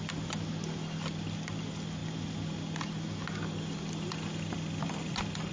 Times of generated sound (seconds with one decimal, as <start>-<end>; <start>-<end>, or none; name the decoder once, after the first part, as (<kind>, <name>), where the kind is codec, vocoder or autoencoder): none